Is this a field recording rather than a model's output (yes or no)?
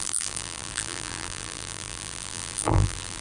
no